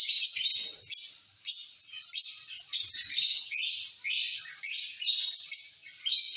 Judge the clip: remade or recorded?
recorded